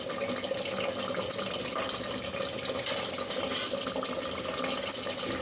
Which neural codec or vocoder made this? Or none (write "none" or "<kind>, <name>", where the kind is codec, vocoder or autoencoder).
none